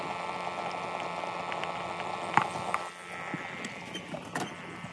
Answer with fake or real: real